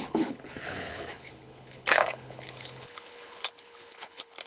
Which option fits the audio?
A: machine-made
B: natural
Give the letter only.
A